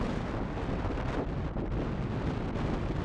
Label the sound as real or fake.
real